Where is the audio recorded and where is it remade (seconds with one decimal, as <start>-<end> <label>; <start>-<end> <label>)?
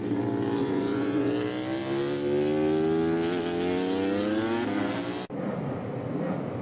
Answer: 0.0-0.6 recorded; 0.6-1.3 remade; 1.3-6.6 recorded